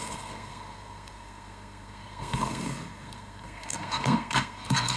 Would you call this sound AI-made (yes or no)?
yes